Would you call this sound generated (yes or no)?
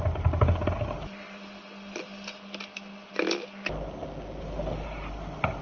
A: no